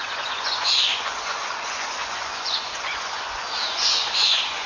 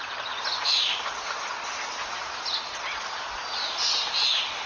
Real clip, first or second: second